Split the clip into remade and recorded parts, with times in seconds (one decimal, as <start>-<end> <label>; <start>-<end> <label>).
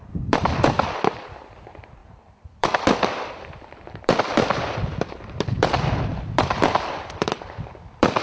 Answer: 0.0-8.2 remade